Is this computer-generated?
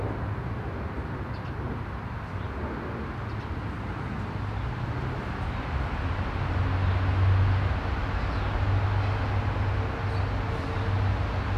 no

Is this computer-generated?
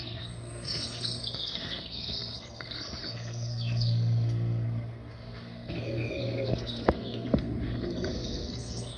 yes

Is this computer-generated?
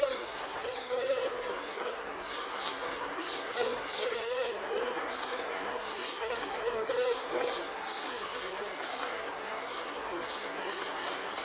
yes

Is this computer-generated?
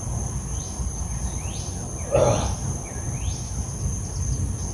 no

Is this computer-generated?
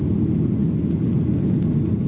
no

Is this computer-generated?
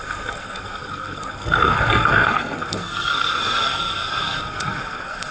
yes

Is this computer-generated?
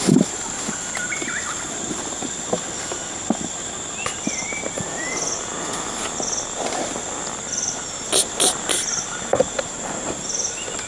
no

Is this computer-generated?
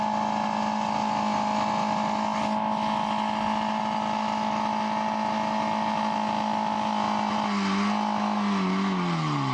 no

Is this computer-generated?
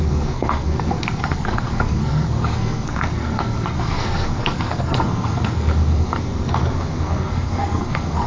yes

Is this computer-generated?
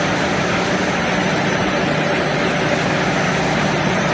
no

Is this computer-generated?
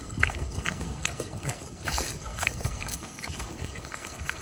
yes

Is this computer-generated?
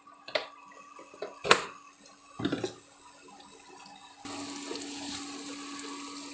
no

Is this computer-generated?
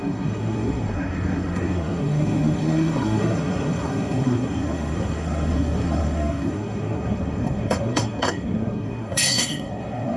yes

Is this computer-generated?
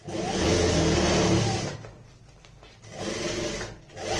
no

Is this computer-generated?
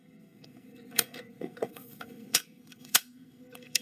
yes